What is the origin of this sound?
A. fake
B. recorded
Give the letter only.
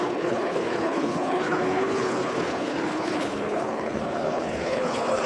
A